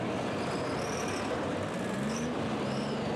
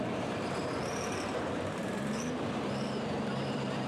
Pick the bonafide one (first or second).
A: first